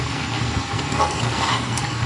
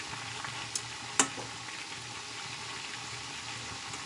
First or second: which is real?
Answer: second